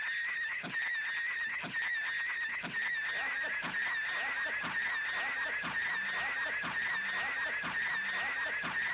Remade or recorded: recorded